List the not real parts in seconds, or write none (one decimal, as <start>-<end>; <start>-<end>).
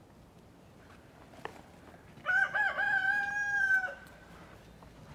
3.8-4.3